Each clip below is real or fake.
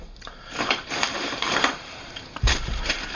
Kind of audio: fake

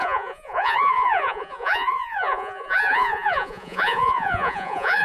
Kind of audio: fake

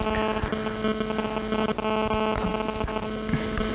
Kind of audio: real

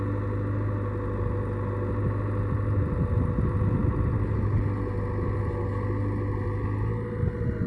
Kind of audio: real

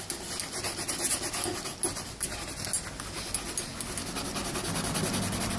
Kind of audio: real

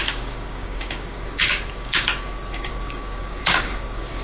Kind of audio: fake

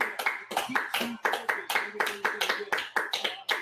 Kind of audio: real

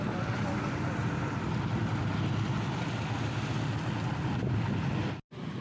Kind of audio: real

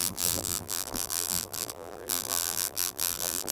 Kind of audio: fake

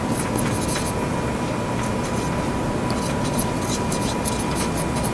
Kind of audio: real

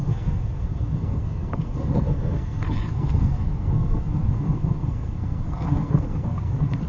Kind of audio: fake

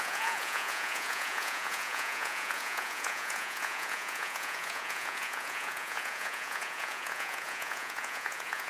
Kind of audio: fake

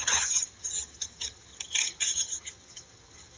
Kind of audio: fake